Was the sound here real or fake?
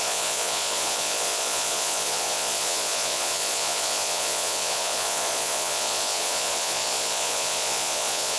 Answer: fake